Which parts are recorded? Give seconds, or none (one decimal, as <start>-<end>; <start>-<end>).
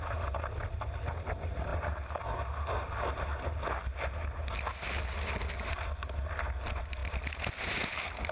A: 0.0-8.3